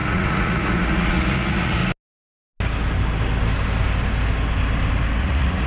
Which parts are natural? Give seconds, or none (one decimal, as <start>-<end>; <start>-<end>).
1.8-5.2